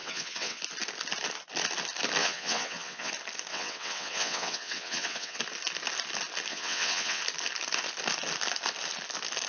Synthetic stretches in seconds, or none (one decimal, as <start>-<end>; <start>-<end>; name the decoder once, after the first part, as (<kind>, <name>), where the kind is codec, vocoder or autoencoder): 0.0-0.6 (vocoder, WaveNeXt); 2.2-3.1; 3.5-5.4; 6.5-7.2